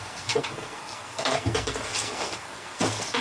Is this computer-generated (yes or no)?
yes